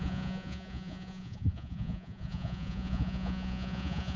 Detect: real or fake fake